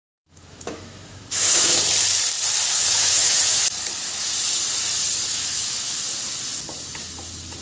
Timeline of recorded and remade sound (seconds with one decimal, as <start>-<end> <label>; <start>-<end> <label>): 0.0-1.8 remade; 1.8-2.8 recorded; 2.8-3.6 remade; 3.6-5.3 recorded; 5.3-6.0 remade; 6.0-7.6 recorded